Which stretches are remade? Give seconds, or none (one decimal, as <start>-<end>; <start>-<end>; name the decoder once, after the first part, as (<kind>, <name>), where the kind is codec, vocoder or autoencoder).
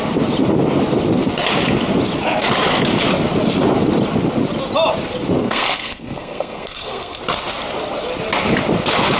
5.4-7.2 (codec, SNAC)